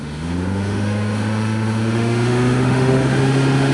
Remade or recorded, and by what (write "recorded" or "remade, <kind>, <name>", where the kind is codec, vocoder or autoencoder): remade, autoencoder, DAC-VAE